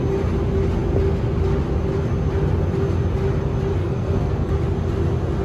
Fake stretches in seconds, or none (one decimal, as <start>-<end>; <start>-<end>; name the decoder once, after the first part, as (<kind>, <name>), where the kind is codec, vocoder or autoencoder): 3.8-4.5 (codec, SNAC)